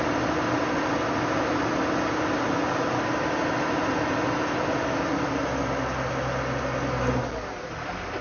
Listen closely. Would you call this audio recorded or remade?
recorded